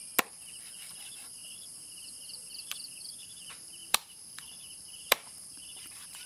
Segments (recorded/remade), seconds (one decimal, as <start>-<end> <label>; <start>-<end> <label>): 0.0-1.0 recorded; 1.0-6.3 remade